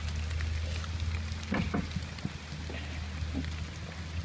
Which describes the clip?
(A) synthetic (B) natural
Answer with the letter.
B